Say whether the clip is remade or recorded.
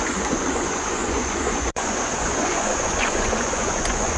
remade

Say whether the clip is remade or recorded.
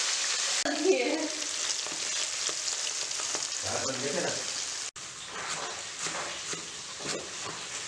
recorded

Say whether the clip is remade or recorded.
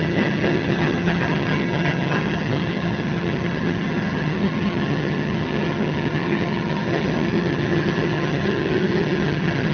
remade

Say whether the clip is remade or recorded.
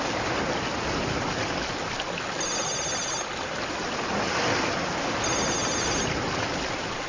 recorded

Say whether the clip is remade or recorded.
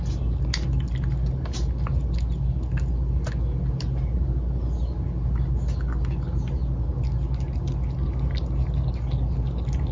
recorded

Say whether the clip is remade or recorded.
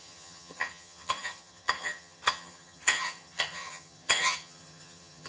remade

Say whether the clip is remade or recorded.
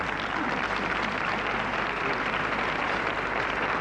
recorded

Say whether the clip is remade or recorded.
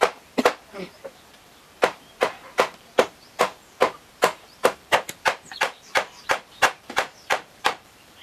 remade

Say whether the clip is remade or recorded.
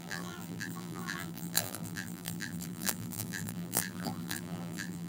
remade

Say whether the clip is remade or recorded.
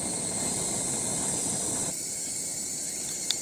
recorded